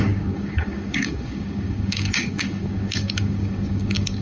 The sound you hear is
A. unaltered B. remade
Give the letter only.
B